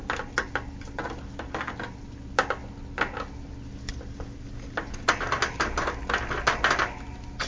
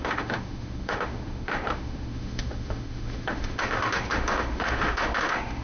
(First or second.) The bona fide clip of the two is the first